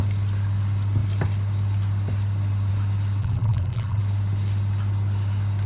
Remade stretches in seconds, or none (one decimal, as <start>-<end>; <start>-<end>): 3.2-4.0